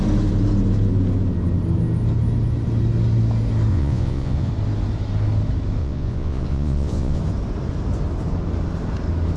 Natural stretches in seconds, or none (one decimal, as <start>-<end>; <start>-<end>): 0.0-3.7; 4.5-5.8; 7.2-9.4